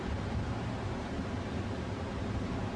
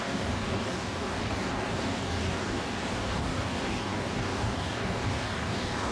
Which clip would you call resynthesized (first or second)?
second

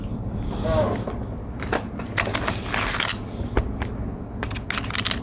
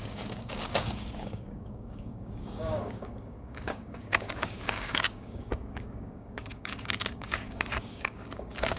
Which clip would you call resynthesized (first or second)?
second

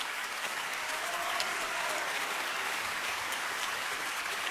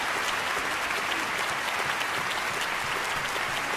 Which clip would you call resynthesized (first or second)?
first